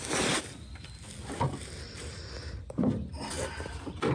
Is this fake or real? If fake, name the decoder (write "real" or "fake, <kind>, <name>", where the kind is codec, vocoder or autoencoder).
real